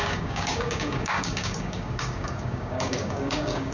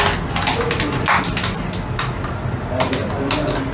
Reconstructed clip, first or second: first